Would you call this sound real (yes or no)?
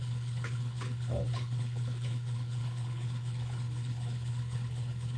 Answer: no